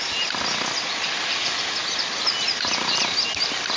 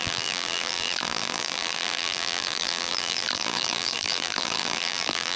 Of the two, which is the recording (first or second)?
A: first